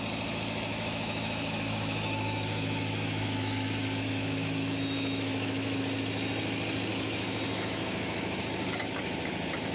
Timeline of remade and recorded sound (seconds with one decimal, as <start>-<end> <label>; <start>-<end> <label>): 0.0-0.7 recorded; 0.7-5.8 remade; 5.8-6.9 recorded; 6.9-8.4 remade; 8.4-9.7 recorded